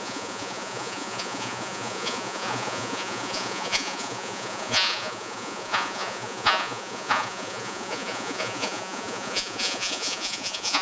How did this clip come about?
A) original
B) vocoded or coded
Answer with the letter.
B